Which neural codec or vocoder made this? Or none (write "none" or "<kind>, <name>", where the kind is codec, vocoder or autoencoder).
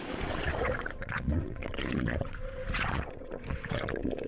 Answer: vocoder, Vocos